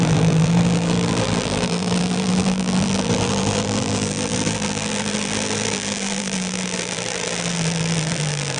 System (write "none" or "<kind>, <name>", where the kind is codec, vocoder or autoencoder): vocoder, BigVGAN v2